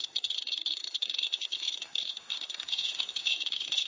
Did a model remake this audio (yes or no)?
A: yes